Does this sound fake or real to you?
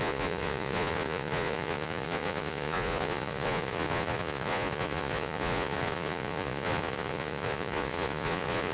fake